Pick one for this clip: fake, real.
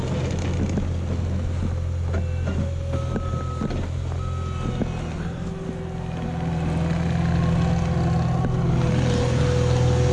real